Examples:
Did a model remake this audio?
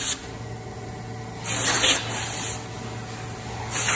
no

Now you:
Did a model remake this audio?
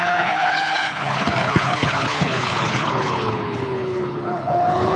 yes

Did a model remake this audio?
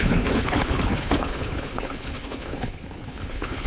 yes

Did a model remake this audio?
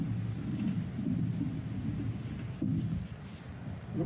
no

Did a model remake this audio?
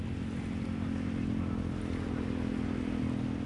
no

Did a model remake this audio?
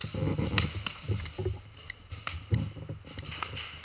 no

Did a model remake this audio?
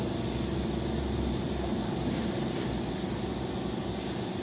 no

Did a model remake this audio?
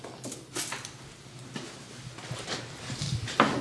no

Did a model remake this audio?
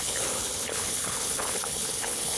yes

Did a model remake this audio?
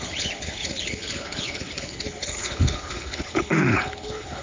yes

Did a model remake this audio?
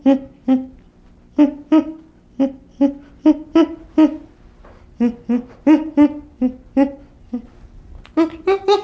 no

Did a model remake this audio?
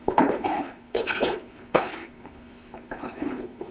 yes